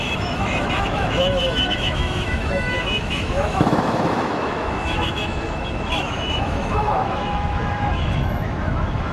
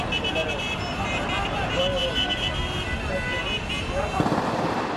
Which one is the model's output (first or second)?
first